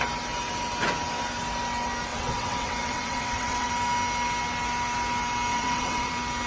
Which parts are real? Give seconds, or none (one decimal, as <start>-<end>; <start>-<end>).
0.0-2.1; 3.7-5.5; 6.1-6.5